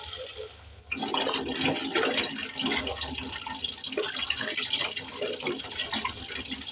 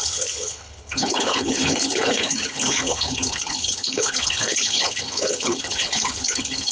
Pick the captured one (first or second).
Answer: first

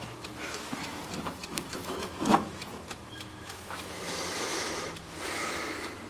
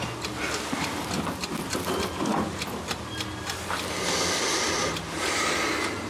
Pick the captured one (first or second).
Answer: second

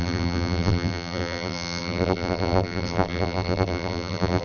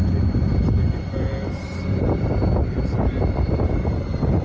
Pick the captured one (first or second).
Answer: second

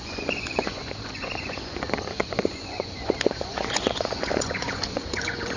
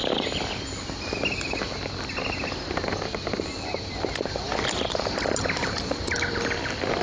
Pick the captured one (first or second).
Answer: second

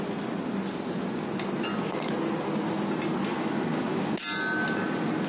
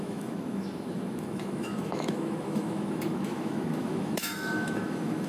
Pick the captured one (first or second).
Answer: first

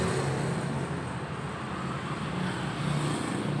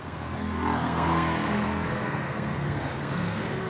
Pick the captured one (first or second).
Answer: first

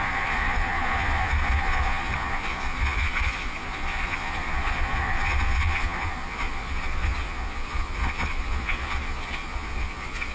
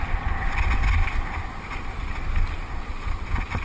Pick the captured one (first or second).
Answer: second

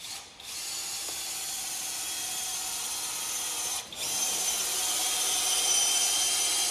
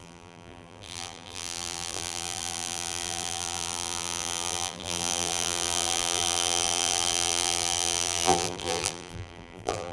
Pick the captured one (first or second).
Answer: first